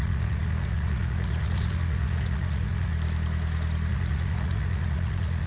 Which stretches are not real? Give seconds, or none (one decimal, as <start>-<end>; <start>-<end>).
0.0-2.9; 3.9-5.5